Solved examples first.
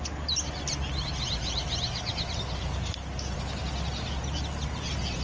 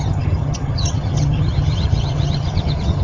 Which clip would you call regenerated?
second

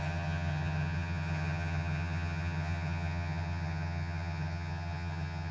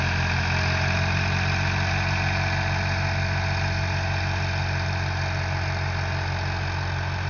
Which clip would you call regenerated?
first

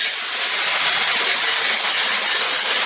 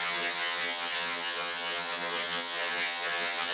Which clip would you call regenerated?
second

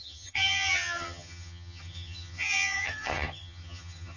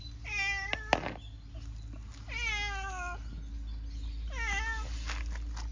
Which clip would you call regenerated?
first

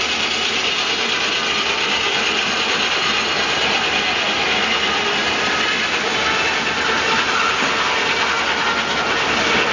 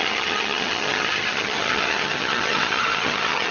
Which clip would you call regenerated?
second